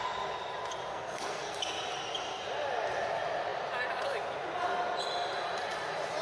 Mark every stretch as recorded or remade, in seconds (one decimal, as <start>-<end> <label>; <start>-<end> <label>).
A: 0.0-0.9 recorded; 0.9-1.6 remade; 1.6-6.2 recorded